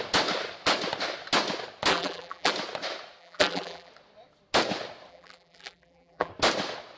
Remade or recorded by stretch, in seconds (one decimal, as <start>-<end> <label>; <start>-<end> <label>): 0.0-1.9 recorded; 1.9-2.5 remade; 2.5-3.2 recorded; 3.2-3.9 remade; 3.9-5.1 recorded; 5.1-6.3 remade; 6.3-7.0 recorded